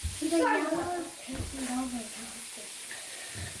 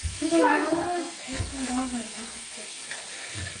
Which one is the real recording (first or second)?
first